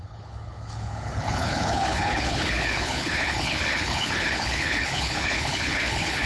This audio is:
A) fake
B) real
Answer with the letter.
A